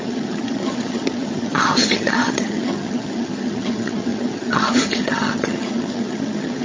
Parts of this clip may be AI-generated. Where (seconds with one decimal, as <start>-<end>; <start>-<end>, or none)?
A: 0.0-6.6